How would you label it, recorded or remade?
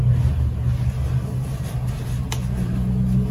recorded